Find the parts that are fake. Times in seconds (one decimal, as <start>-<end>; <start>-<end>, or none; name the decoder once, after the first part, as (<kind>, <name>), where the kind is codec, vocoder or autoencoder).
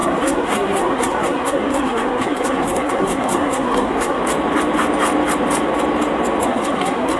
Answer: 0.0-4.2 (codec, SNAC); 6.4-7.2